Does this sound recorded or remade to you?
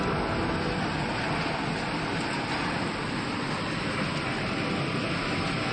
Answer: recorded